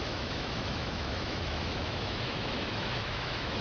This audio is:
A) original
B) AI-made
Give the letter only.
B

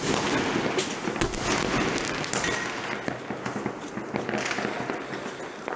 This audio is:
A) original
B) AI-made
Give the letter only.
A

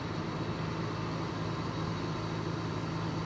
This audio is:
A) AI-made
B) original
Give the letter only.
B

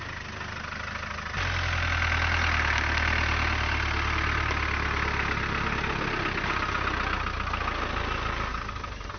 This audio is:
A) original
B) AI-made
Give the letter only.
A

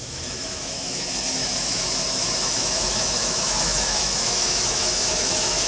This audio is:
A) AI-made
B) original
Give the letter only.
A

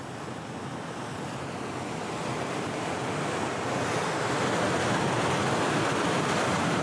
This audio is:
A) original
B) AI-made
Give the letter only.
A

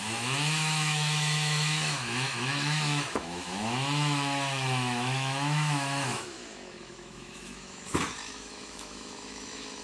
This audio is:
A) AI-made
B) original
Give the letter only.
A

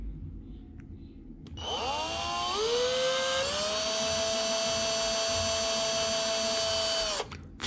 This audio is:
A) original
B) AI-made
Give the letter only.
A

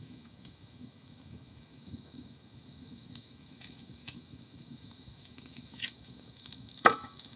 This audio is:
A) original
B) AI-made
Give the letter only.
B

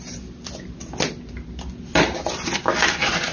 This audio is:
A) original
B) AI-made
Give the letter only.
A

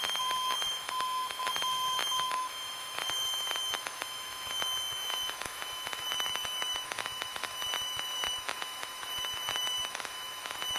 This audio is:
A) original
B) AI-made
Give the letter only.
B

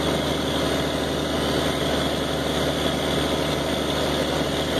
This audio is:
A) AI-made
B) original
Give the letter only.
B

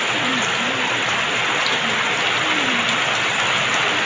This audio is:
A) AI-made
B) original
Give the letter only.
B